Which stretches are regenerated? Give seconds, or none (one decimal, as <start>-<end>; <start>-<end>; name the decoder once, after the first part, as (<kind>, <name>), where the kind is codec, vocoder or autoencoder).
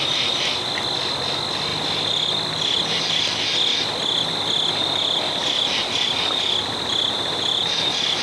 none